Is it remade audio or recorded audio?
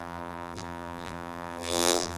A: remade